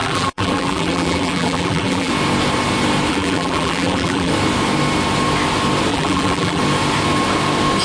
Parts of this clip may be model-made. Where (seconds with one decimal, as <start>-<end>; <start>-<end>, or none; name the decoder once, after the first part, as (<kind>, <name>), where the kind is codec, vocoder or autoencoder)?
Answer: 0.0-2.1 (vocoder, BigVGAN v2); 3.1-4.3; 5.9-6.6